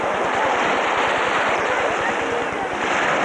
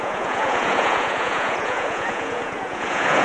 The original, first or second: first